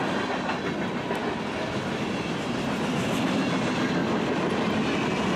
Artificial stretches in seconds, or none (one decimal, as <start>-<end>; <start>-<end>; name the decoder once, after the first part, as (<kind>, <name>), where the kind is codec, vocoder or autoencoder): none